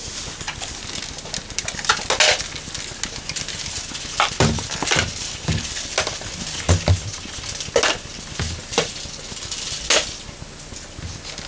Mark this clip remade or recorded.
recorded